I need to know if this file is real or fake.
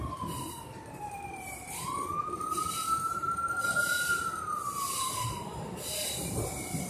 fake